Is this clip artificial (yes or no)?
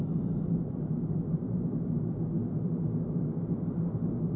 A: yes